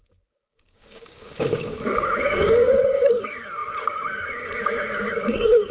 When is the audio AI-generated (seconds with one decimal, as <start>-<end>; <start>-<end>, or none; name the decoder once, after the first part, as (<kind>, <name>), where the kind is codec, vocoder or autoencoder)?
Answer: 0.0-5.7 (codec, DAC)